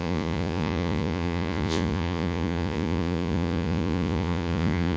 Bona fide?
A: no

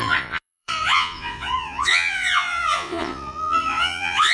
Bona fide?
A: no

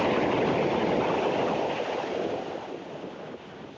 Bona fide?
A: yes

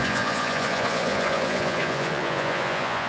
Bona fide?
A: no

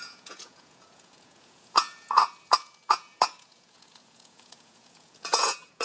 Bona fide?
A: no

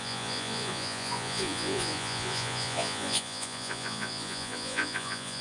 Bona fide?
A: no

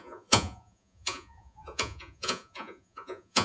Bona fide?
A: no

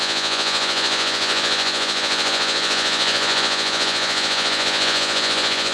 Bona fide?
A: no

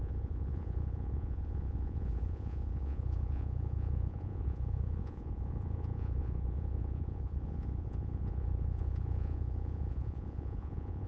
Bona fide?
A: no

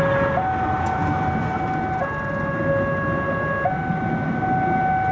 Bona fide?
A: yes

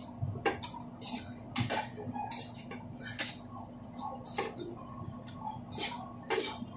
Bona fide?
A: yes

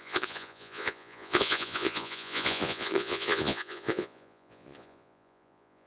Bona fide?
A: no